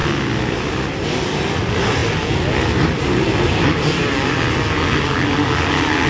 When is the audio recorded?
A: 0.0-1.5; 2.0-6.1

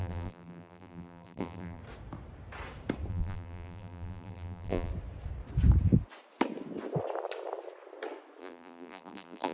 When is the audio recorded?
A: 1.8-3.1; 4.9-8.4

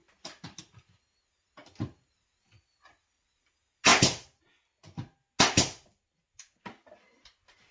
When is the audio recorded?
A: 0.0-1.6; 3.5-7.7

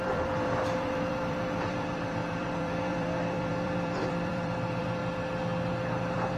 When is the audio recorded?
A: 5.0-6.0

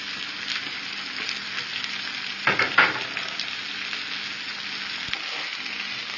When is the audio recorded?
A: 0.0-6.2